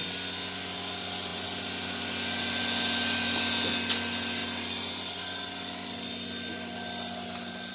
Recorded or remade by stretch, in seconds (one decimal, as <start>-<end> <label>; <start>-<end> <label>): 0.0-7.7 recorded